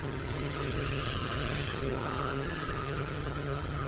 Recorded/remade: remade